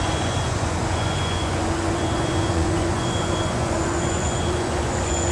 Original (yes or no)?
no